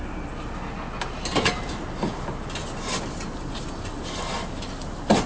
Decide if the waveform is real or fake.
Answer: real